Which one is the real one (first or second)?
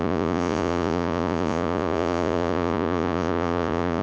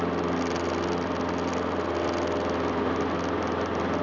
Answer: second